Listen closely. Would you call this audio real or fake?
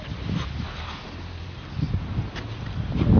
fake